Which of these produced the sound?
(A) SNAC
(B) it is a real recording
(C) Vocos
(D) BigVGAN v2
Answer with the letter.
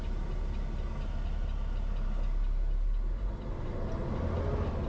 B